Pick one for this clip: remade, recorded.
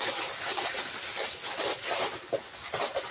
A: remade